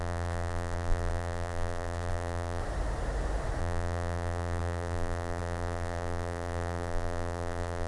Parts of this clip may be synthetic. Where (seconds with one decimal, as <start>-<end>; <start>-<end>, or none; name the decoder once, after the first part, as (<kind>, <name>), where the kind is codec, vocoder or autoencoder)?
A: 0.0-2.6 (vocoder, BigVGAN v2); 3.6-7.9